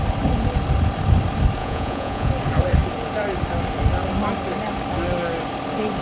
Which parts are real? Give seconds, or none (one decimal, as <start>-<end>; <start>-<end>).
0.0-1.6; 2.3-6.0